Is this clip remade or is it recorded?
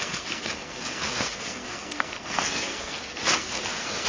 remade